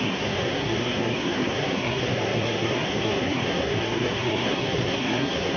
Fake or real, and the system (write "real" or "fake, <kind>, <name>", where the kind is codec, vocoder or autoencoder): fake, codec, SNAC